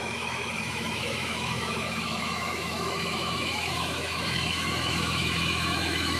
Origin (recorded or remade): remade